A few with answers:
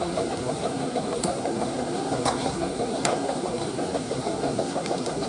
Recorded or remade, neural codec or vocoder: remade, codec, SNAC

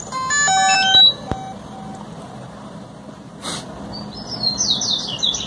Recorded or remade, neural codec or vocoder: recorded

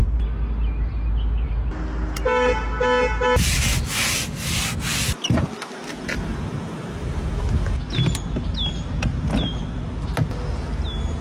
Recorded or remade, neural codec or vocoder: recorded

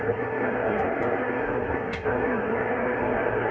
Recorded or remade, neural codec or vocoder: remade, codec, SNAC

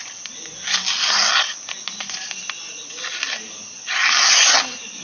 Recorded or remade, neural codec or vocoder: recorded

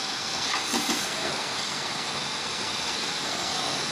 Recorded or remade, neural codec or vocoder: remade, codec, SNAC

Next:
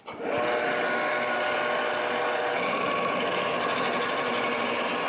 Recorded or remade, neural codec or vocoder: recorded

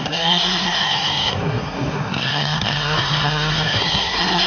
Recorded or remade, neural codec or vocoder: remade, codec, SNAC